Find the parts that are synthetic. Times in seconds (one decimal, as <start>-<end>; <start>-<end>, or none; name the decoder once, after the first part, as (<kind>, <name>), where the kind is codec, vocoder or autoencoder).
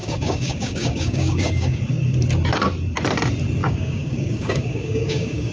0.0-1.8 (codec, DAC); 3.6-5.5